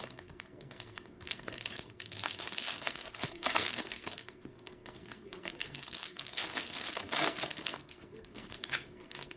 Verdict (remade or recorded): remade